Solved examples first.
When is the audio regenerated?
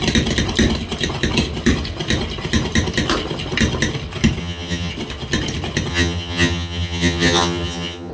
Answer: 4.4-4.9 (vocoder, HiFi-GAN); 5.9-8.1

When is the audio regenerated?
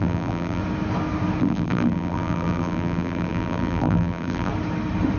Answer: 0.0-0.6 (vocoder, BigVGAN v2); 1.4-4.5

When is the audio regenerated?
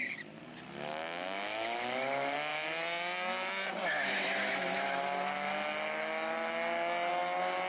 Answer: none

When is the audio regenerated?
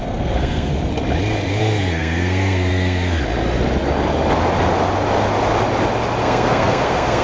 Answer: 0.0-0.7 (codec, SNAC); 1.6-3.2; 6.2-7.2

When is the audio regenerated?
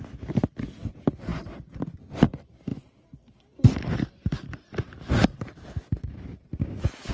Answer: none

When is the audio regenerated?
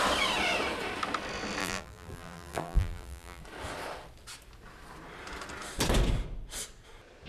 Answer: 1.6-3.4 (vocoder, BigVGAN v2)